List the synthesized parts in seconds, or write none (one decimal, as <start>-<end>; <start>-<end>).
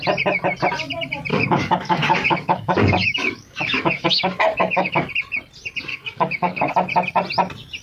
1.3-5.1; 5.9-6.7